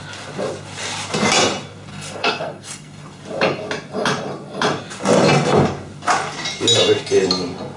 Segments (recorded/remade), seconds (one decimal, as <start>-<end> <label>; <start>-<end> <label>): 0.0-1.9 recorded; 1.9-3.2 remade; 3.2-7.8 recorded